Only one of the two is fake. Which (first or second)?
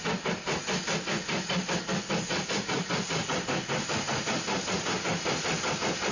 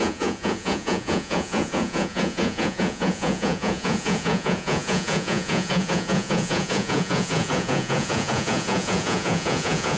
second